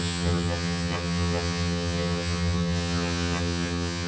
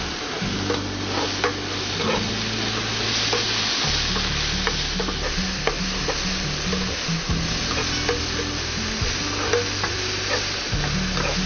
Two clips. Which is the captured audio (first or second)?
second